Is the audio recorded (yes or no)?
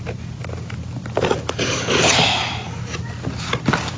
yes